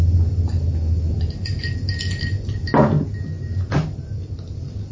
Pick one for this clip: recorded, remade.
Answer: recorded